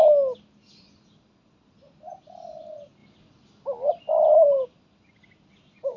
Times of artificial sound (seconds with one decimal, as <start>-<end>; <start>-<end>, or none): none